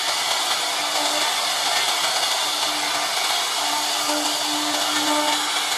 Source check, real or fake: real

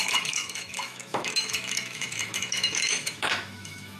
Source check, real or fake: fake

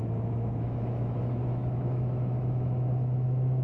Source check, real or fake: fake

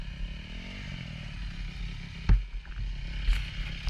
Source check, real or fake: real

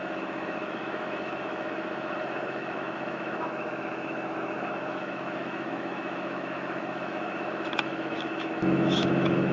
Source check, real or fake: fake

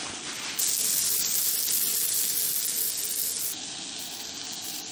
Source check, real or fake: real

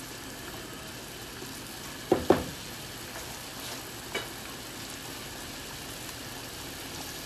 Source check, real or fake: real